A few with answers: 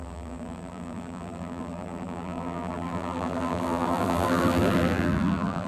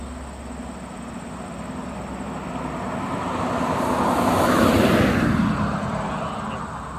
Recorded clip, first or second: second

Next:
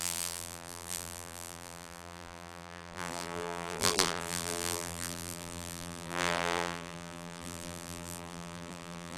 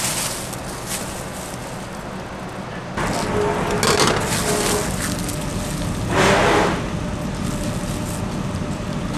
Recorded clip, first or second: second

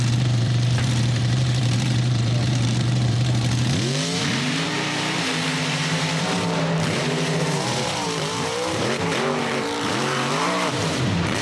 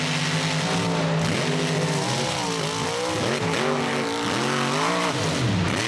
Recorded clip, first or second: second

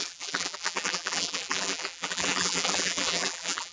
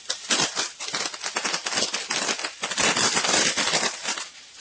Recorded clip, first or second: second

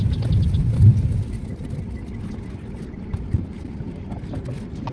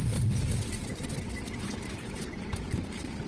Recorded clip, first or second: first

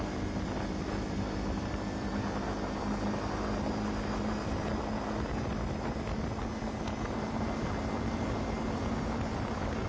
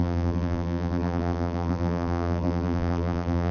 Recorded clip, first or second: first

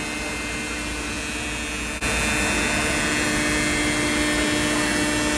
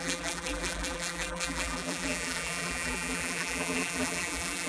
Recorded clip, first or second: first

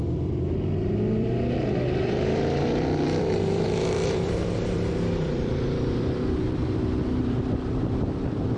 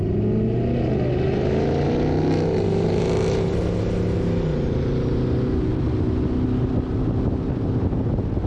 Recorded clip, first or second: second